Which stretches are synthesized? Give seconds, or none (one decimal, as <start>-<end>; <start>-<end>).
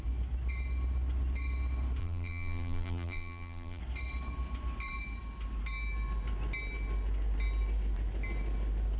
2.0-3.8